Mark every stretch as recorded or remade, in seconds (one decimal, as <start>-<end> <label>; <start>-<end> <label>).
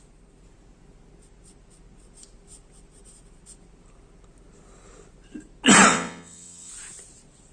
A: 0.0-5.9 recorded; 5.9-6.7 remade; 6.7-7.5 recorded